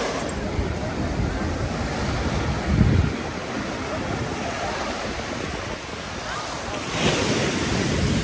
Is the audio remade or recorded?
recorded